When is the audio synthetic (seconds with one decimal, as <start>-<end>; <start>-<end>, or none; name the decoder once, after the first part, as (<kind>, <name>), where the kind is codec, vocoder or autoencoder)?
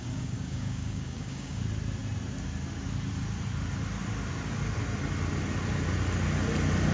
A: 0.0-1.6 (codec, DAC)